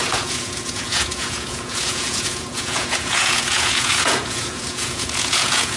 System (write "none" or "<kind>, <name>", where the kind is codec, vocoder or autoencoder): vocoder, Vocos